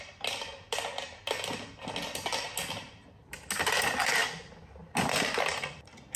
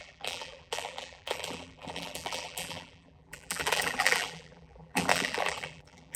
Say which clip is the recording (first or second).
first